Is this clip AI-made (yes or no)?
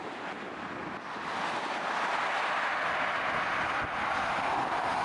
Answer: no